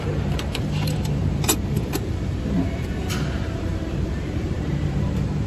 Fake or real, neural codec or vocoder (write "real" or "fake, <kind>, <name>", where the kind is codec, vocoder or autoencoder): fake, vocoder, BigVGAN v2